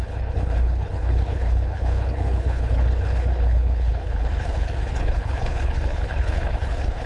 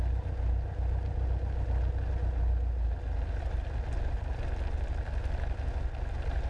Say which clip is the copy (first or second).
first